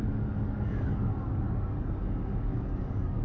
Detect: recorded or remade remade